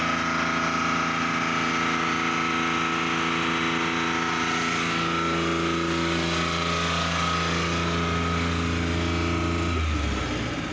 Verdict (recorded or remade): recorded